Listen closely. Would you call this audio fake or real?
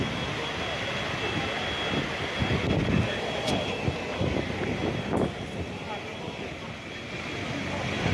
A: real